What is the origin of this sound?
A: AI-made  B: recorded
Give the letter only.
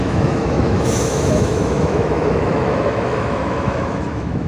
A